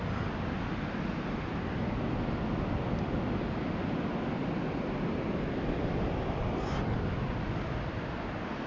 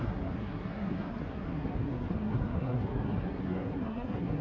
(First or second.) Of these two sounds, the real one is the first